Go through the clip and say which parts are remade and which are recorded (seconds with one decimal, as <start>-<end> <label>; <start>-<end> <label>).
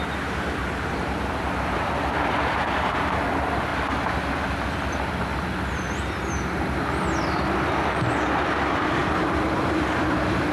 0.0-0.6 recorded; 0.6-3.3 remade; 3.3-9.0 recorded; 9.0-10.0 remade; 10.0-10.5 recorded